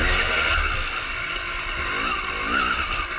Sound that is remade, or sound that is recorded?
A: recorded